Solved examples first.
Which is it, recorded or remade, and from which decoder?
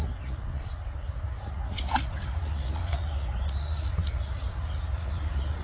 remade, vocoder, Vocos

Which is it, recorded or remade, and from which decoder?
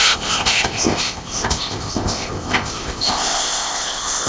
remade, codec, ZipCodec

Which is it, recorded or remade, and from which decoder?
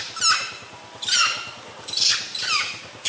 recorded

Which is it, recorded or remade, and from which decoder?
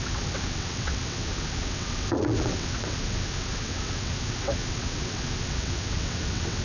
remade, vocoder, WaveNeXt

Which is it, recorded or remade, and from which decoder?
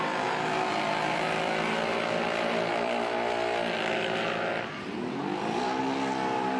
remade, vocoder, BigVGAN v2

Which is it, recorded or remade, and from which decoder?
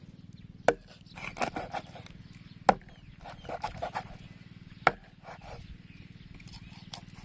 recorded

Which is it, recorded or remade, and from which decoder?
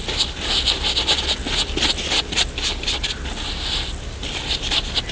recorded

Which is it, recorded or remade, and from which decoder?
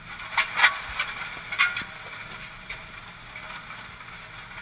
recorded